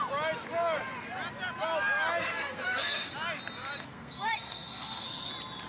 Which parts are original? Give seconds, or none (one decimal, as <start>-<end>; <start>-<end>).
0.0-2.2; 3.1-3.9; 5.3-5.7